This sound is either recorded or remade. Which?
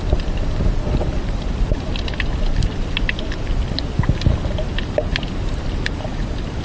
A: recorded